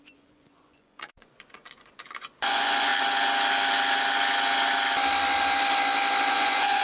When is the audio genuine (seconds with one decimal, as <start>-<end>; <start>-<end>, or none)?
2.9-6.3